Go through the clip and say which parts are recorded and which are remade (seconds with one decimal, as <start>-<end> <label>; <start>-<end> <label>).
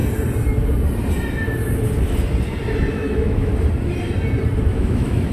0.0-2.9 recorded; 2.9-3.5 remade; 3.5-4.7 recorded; 4.7-5.3 remade